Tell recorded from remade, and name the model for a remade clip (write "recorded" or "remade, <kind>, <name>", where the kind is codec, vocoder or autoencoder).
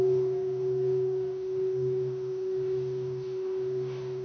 remade, codec, DAC